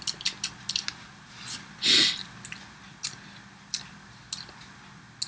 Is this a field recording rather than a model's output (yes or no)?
yes